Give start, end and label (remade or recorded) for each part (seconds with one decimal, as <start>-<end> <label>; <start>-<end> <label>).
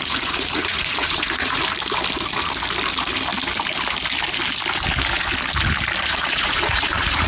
0.0-1.6 remade; 1.6-6.0 recorded; 6.0-7.3 remade